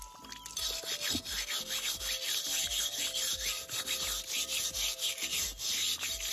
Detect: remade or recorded recorded